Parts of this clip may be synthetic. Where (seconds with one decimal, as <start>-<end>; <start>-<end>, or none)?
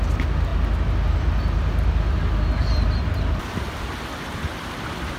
none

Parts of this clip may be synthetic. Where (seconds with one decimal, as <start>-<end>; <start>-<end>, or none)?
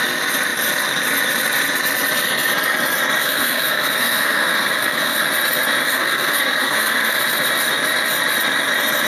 3.2-5.2; 5.8-7.2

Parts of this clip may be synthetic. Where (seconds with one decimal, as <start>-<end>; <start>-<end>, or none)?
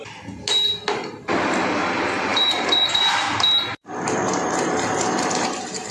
2.3-3.0; 3.7-5.9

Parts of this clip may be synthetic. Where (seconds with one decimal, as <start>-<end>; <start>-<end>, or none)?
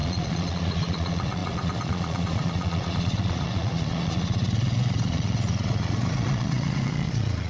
0.0-7.5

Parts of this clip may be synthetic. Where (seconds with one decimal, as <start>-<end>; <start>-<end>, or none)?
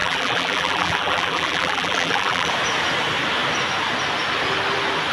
0.0-2.5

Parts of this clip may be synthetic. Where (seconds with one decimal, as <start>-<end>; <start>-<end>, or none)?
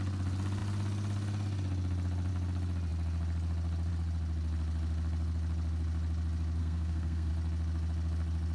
6.6-7.3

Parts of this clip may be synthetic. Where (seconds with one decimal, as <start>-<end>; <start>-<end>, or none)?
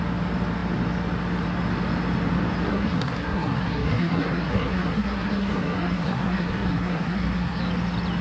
2.7-7.6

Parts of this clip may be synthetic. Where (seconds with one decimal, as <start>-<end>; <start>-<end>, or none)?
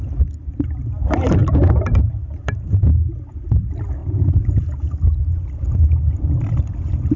4.0-7.2